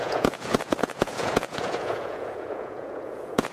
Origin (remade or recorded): remade